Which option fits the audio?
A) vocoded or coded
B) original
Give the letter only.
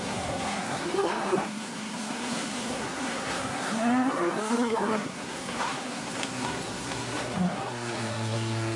A